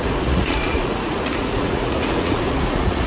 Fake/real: fake